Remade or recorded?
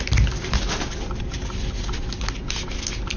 recorded